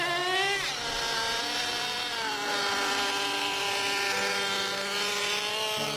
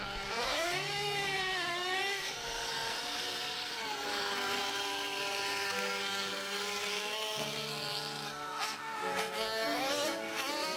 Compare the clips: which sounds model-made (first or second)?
second